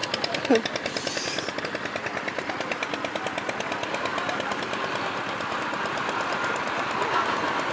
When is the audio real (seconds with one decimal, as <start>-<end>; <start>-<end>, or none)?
0.0-7.7